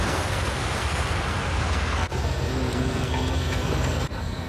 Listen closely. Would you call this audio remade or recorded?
remade